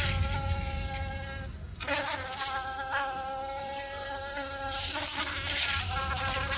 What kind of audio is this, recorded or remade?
recorded